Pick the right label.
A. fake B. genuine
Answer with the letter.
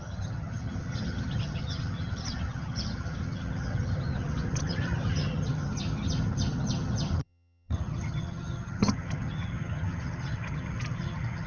A